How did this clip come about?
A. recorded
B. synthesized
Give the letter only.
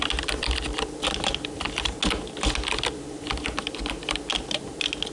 A